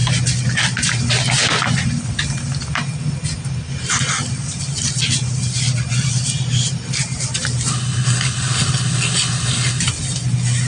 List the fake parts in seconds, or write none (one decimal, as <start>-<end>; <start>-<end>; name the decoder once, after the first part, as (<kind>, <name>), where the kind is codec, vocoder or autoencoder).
7.7-9.8 (codec, HILCodec)

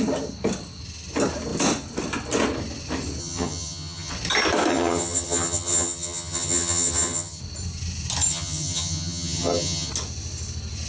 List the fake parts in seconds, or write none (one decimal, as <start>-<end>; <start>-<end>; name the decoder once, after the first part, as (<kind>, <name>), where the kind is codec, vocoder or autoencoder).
3.2-4.1 (vocoder, HiFi-GAN); 4.7-7.4; 8.3-9.9

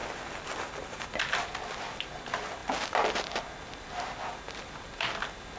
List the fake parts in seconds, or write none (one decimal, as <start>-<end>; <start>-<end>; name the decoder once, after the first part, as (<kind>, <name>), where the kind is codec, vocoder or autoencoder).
none

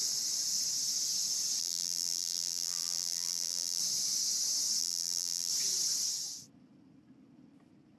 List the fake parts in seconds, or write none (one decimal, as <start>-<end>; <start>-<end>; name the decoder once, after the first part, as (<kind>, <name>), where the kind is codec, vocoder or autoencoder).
1.6-3.8 (vocoder, BigVGAN v2); 4.8-5.5

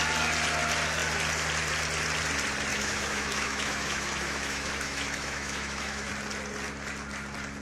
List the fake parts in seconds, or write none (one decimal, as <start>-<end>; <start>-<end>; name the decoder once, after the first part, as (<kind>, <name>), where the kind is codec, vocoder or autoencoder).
2.7-6.1 (autoencoder, DAC-VAE)

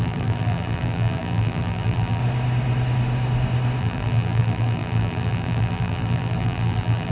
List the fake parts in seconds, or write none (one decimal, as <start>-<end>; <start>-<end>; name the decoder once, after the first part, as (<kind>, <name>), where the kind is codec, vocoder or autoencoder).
0.0-2.2 (vocoder, BigVGAN v2); 3.8-7.1

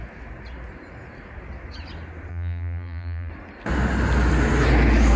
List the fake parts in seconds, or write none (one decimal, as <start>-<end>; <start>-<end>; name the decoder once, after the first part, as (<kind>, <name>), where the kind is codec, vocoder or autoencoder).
2.3-3.3 (vocoder, BigVGAN v2)